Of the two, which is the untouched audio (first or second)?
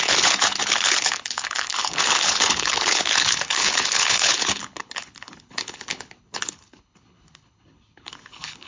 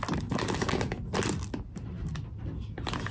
second